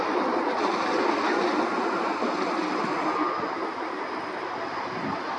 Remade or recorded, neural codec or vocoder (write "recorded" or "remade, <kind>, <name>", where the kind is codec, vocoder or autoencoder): recorded